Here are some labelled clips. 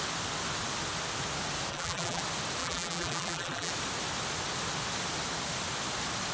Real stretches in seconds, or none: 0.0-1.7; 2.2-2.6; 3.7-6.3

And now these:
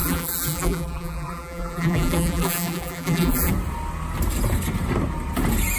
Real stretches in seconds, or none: 3.5-5.8

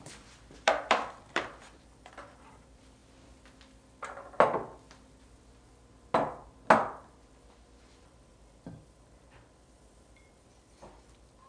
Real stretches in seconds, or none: 3.0-7.8

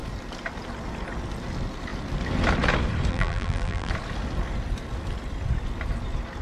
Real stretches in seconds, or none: 0.0-3.1; 3.9-6.4

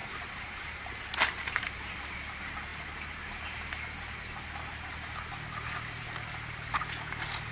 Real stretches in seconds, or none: 1.9-7.5